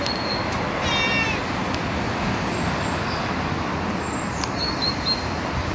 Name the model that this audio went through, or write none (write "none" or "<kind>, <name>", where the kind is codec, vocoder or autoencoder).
none